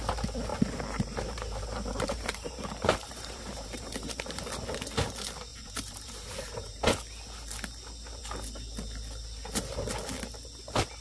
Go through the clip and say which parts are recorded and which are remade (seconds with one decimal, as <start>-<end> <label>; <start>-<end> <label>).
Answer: 0.0-0.5 recorded; 0.5-4.4 remade; 4.4-5.5 recorded; 5.5-6.8 remade; 6.8-11.0 recorded